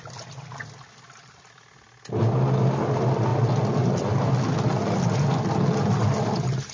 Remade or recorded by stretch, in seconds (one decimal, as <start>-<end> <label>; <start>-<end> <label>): 0.0-6.7 recorded